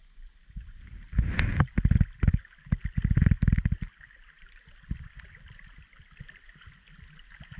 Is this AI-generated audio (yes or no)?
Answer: no